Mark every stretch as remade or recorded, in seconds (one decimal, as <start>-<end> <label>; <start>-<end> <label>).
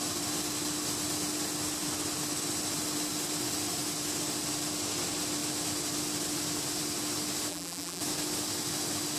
0.0-7.5 recorded; 7.5-8.0 remade; 8.0-9.2 recorded